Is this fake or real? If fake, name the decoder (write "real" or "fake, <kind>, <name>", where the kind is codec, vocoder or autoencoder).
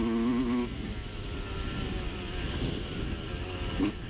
real